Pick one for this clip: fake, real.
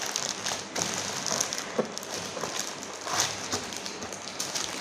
real